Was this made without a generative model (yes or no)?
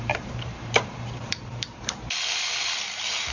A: no